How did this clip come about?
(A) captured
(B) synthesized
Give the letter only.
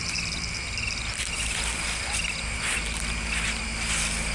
A